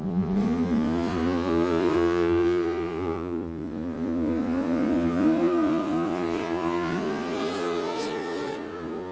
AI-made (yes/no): yes